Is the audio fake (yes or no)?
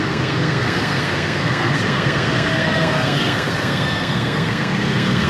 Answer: yes